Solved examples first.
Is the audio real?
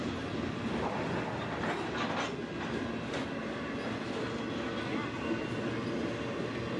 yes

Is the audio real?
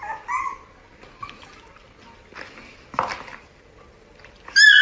yes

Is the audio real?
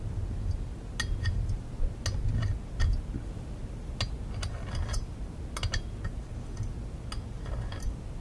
yes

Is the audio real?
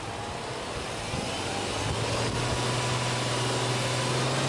yes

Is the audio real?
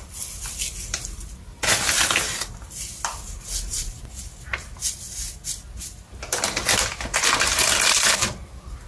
yes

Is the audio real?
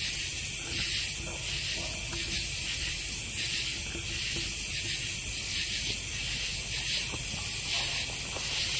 yes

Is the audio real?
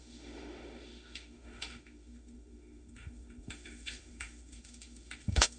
no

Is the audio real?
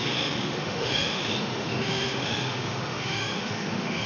no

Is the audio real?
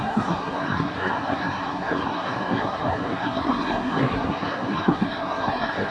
no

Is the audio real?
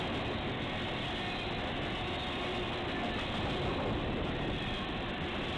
yes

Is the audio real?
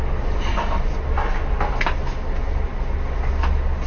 yes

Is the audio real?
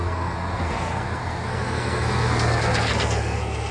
no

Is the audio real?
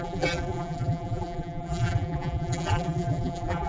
no